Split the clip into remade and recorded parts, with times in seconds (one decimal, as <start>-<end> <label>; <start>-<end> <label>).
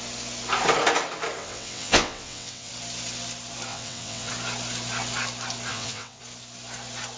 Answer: 0.0-1.4 recorded; 1.4-2.7 remade; 2.7-3.7 recorded; 3.7-4.3 remade; 4.3-5.7 recorded; 5.7-6.2 remade; 6.2-7.2 recorded